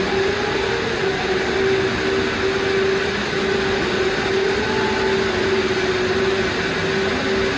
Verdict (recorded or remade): recorded